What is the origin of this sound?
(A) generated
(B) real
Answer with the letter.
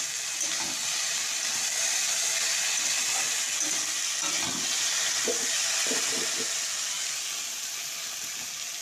B